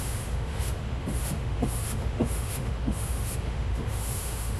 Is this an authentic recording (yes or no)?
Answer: no